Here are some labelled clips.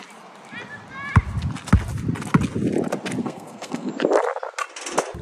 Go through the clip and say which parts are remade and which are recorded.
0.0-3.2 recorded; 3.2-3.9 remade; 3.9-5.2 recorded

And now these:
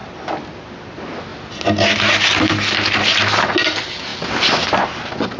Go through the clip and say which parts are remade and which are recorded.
0.0-5.4 recorded

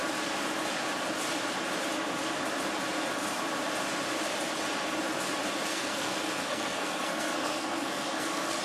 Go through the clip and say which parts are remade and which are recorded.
0.0-5.7 recorded; 5.7-8.6 remade